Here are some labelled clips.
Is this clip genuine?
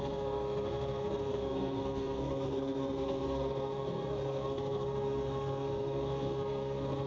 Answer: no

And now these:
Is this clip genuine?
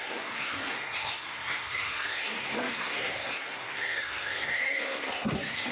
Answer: no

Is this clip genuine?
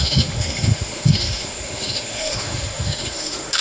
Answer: no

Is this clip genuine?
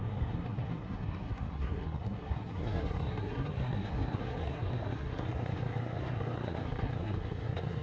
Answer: no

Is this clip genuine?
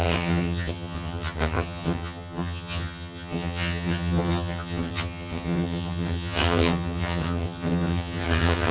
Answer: no